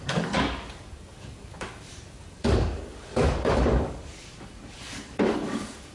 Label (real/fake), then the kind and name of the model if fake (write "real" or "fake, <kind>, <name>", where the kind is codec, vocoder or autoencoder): fake, codec, DAC